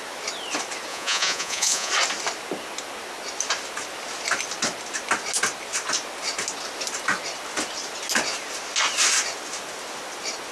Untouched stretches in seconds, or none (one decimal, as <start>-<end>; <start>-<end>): 0.0-0.9; 1.9-10.5